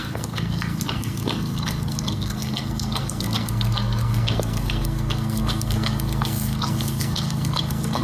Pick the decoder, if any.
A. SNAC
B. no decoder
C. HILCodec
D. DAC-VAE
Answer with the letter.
A